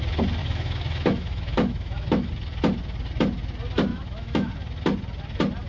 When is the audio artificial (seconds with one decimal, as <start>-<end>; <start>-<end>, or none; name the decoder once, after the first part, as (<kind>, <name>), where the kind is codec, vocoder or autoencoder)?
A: 0.4-2.3 (autoencoder, DAC-VAE); 3.9-4.5